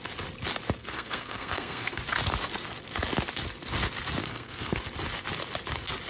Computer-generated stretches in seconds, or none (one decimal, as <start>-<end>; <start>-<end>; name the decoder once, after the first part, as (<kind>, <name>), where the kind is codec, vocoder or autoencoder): 0.8-2.0 (codec, SNAC); 4.2-4.8